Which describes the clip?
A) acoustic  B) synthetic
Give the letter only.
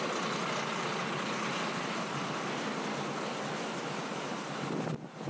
A